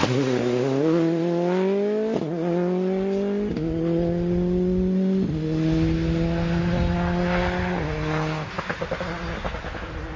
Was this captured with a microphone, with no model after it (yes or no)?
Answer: yes